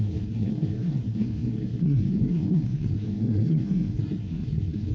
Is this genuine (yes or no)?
no